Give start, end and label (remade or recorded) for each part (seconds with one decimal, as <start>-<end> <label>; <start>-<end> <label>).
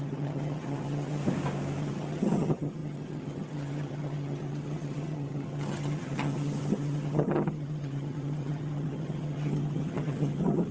0.0-1.2 remade; 1.2-1.8 recorded; 1.8-10.7 remade